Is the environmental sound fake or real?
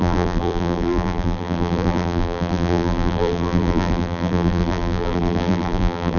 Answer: fake